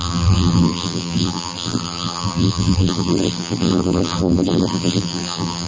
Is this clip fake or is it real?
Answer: fake